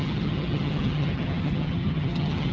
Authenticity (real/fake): fake